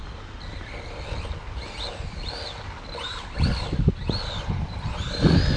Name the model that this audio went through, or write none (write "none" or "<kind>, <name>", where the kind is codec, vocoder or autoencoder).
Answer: none